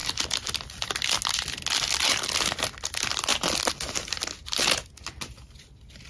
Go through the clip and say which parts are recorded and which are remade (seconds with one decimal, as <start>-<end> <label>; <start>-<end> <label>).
0.0-6.1 recorded

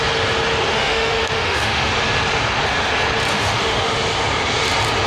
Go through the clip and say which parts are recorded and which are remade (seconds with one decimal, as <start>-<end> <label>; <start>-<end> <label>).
0.0-0.7 recorded; 0.7-1.9 remade; 1.9-3.3 recorded; 3.3-4.0 remade; 4.0-5.1 recorded

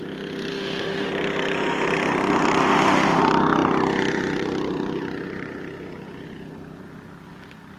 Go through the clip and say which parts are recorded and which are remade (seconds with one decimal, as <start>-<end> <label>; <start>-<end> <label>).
0.0-0.5 recorded; 0.5-1.1 remade; 1.1-2.6 recorded; 2.6-3.2 remade; 3.2-7.8 recorded